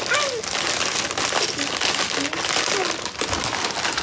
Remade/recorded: recorded